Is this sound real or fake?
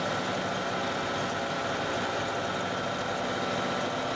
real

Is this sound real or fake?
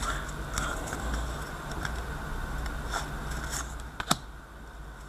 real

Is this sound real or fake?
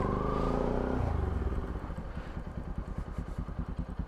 real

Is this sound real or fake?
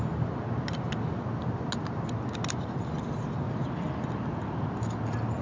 real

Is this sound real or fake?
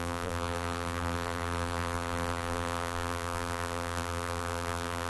fake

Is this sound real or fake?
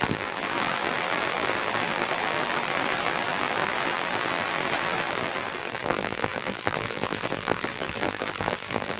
fake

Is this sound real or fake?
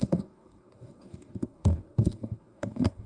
fake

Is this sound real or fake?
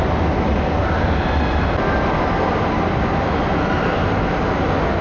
real